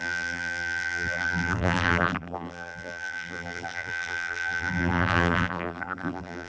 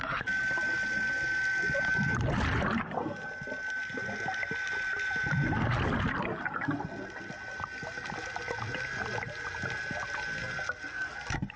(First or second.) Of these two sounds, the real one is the second